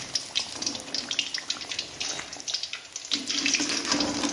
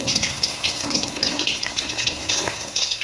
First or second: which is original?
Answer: first